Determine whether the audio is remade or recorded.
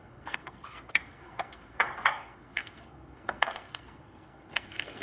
remade